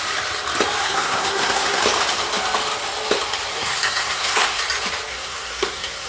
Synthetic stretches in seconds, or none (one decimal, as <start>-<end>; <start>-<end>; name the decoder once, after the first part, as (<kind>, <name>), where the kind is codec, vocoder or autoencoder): 0.8-1.8 (codec, SNAC); 3.5-4.6; 5.1-6.1